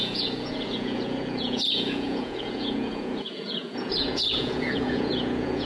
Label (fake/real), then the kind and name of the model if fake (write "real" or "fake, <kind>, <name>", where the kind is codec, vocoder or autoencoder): fake, vocoder, Vocos